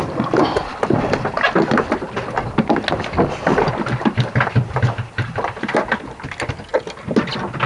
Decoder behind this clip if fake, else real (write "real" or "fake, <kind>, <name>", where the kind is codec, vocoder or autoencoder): real